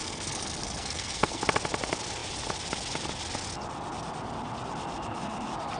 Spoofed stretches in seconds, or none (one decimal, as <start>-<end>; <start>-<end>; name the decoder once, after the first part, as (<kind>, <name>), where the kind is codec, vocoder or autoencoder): 0.0-1.4 (codec, SNAC)

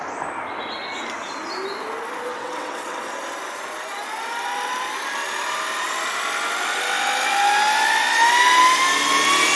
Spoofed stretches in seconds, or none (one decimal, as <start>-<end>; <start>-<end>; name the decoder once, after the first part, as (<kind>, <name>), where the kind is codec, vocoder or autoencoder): 2.3-3.0 (vocoder, WaveNeXt)

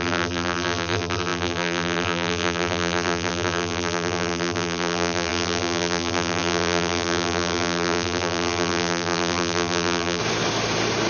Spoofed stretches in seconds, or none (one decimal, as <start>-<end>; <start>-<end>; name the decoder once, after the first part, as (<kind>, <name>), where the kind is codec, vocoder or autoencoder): 0.0-10.2 (vocoder, BigVGAN v2)

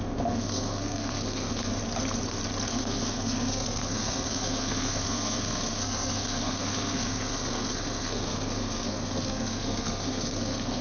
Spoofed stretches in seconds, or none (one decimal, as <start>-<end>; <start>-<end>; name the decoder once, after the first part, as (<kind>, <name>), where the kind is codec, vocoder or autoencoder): 0.0-1.8 (codec, SNAC); 2.7-10.8

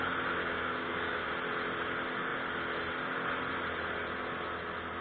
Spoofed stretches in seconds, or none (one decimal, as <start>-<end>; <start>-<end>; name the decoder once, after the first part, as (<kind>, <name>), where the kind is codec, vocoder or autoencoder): 0.4-1.3 (codec, DAC)

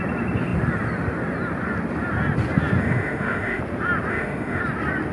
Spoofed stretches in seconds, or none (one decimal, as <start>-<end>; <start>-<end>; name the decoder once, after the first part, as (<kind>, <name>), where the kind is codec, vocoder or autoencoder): 2.8-3.6 (autoencoder, DAC-VAE); 4.1-4.6